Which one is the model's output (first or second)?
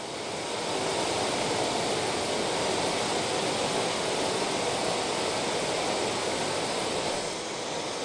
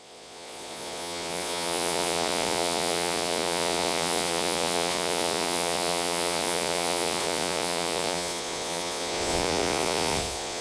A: second